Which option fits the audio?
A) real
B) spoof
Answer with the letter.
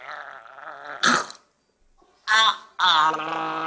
A